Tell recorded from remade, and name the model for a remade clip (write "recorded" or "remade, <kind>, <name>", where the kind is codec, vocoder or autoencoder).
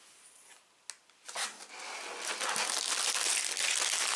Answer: recorded